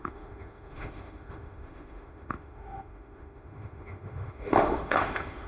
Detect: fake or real fake